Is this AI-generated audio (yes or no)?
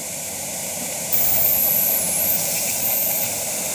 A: yes